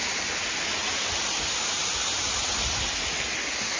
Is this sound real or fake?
real